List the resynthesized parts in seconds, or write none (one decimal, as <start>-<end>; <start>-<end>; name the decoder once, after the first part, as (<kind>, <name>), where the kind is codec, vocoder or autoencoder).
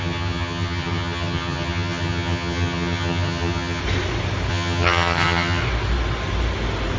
0.0-3.8 (vocoder, HiFi-GAN); 4.5-5.6